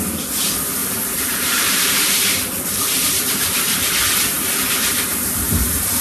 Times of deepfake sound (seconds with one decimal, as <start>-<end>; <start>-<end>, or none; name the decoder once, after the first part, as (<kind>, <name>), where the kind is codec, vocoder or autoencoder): 0.8-3.9 (vocoder, BigVGAN v2); 5.1-6.0